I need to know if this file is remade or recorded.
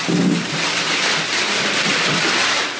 recorded